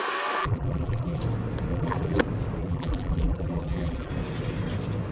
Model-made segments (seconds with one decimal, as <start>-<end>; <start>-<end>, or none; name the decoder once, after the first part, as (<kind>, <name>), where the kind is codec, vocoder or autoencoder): 0.4-1.2 (vocoder, BigVGAN v2); 1.7-2.2; 2.6-4.1